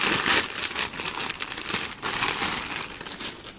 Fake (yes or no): no